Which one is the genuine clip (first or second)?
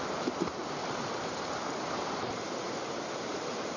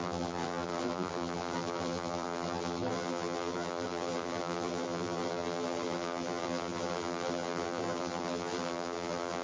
first